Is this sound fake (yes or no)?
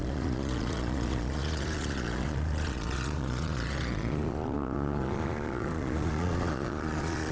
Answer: yes